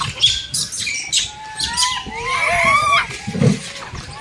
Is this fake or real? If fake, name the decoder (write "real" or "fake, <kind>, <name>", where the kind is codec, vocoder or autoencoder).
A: real